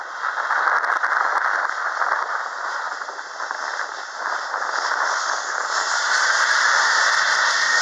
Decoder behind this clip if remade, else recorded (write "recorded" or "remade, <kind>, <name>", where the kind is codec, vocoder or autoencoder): recorded